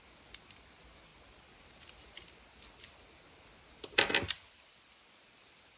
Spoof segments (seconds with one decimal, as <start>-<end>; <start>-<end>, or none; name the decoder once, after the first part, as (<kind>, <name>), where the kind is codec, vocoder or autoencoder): none